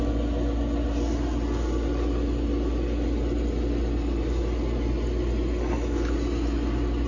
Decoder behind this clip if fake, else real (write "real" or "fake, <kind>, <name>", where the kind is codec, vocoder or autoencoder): real